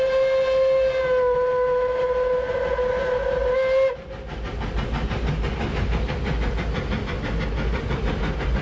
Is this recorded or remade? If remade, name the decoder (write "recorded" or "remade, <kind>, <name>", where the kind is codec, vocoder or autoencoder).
recorded